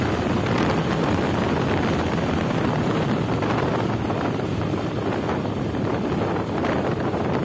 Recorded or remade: recorded